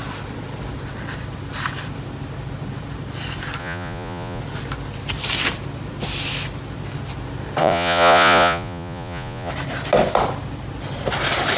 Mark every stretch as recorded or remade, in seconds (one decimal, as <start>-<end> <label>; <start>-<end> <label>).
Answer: 0.0-3.6 recorded; 3.6-4.4 remade; 4.4-7.6 recorded; 7.6-9.5 remade; 9.5-11.6 recorded